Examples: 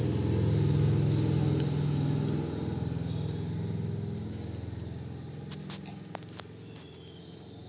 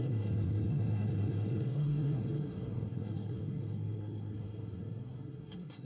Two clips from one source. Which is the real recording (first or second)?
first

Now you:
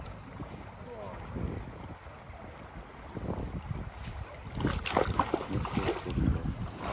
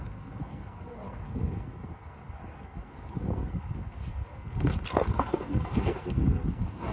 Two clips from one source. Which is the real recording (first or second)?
first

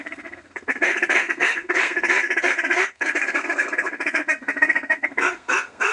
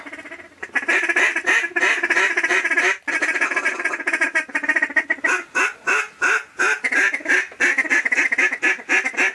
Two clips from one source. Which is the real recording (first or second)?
second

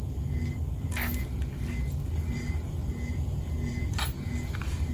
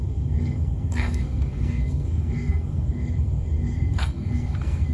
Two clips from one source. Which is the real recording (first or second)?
first